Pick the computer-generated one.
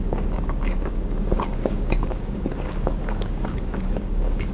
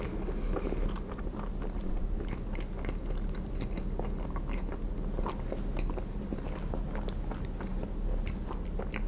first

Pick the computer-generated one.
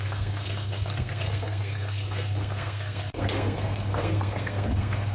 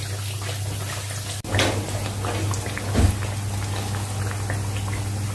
first